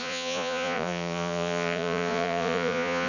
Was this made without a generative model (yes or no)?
no